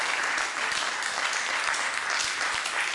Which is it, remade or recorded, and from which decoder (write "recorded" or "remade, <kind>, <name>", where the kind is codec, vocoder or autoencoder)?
recorded